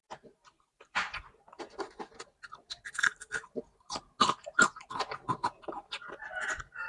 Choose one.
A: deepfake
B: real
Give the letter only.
B